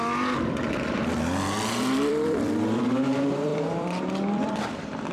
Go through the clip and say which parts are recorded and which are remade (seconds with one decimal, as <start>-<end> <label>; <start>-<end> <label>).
0.0-5.1 remade